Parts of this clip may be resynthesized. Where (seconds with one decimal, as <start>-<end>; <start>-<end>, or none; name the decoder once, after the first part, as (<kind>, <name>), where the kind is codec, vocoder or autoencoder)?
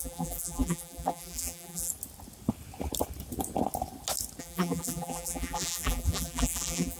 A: 0.0-1.9 (vocoder, BigVGAN v2); 4.4-7.0